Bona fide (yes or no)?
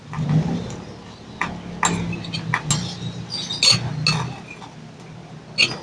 yes